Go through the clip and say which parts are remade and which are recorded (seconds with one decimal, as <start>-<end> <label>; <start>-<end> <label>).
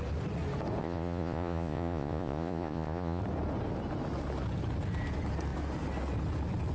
0.0-0.8 recorded; 0.8-3.2 remade; 3.2-6.7 recorded